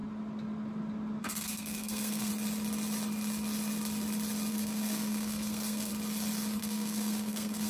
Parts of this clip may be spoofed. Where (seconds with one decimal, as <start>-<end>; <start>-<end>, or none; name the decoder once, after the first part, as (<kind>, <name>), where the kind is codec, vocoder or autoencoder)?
1.2-2.3 (codec, SNAC); 4.5-5.9; 6.6-7.7